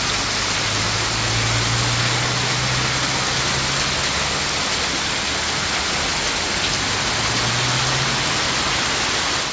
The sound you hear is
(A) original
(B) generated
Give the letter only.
A